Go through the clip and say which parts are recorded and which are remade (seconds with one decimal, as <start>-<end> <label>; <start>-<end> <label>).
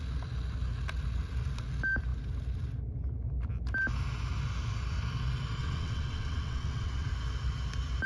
0.0-5.6 recorded; 5.6-7.1 remade; 7.1-8.1 recorded